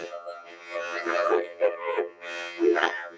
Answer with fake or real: fake